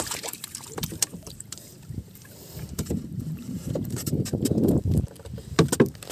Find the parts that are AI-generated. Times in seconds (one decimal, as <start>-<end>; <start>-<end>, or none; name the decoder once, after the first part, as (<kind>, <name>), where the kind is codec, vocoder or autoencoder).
0.0-4.5 (vocoder, BigVGAN v2)